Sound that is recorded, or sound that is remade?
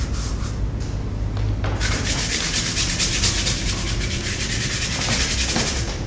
recorded